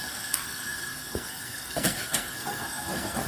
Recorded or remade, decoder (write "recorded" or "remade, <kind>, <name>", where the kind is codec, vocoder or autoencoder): remade, codec, SNAC